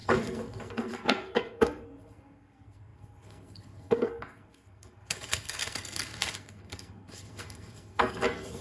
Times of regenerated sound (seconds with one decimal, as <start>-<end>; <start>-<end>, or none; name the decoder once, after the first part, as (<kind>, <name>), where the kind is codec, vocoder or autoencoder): 0.0-8.6 (codec, SNAC)